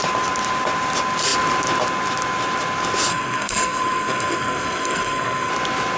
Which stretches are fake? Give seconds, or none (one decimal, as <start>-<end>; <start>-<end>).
3.1-5.5